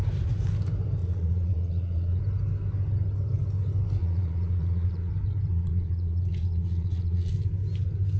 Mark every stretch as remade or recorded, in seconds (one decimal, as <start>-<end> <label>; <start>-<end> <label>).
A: 0.0-1.0 recorded; 1.0-2.2 remade; 2.2-4.0 recorded; 4.0-5.1 remade; 5.1-5.5 recorded; 5.5-7.3 remade; 7.3-8.2 recorded